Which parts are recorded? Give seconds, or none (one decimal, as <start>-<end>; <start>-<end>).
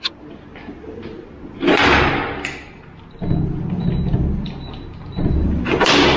0.0-6.2